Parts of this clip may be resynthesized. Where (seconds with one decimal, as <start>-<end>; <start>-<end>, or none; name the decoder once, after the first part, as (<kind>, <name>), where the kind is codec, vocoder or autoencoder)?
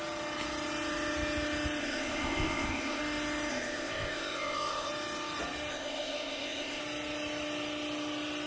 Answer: 1.8-3.0 (codec, ZipCodec); 3.5-4.9; 5.7-6.8